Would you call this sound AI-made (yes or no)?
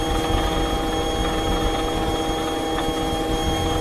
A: no